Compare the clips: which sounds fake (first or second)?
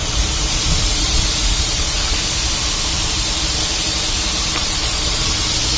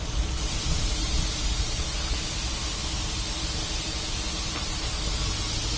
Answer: first